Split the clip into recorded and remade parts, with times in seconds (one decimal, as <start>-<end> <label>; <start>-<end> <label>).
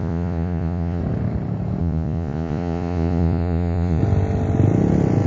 0.0-1.0 remade; 1.0-1.8 recorded; 1.8-4.0 remade; 4.0-5.3 recorded